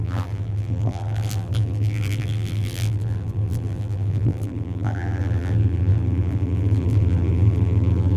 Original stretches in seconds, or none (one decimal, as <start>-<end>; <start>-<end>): none